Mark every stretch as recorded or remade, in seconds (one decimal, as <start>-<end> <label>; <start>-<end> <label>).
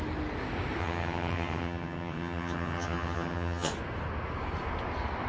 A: 0.0-0.8 recorded; 0.8-3.7 remade; 3.7-5.3 recorded